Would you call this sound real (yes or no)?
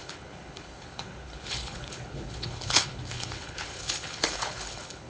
no